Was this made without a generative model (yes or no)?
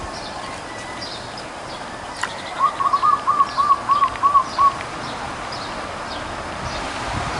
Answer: yes